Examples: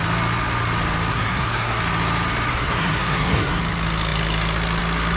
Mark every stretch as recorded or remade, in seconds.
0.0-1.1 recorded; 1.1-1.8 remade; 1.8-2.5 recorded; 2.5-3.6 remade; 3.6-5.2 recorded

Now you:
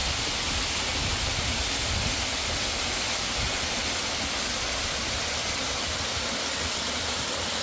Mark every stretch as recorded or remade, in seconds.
0.0-7.6 recorded

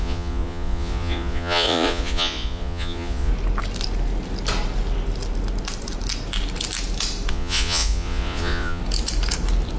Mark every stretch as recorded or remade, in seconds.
0.0-3.3 remade; 3.3-7.3 recorded; 7.3-8.8 remade; 8.8-9.8 recorded

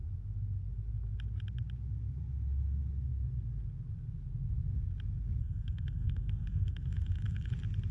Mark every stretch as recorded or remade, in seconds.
0.0-5.4 recorded; 5.4-7.5 remade; 7.5-7.9 recorded

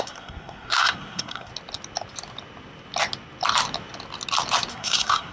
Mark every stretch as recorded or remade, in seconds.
0.0-1.5 remade; 1.5-4.7 recorded; 4.7-5.3 remade

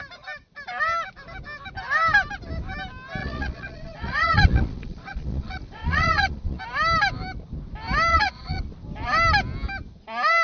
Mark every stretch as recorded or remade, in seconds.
0.0-3.2 recorded; 3.2-6.6 remade; 6.6-8.1 recorded; 8.1-8.7 remade; 8.7-10.4 recorded